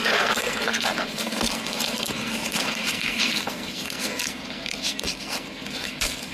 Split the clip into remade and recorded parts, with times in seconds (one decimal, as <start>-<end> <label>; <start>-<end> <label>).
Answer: 0.0-6.3 remade